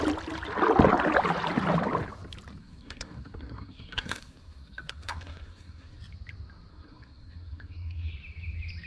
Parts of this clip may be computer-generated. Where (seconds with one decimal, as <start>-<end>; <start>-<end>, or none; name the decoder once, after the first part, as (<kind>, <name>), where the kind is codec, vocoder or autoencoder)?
2.6-6.0 (codec, SNAC); 6.7-8.1